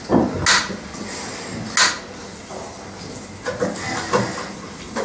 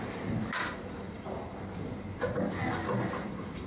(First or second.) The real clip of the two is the first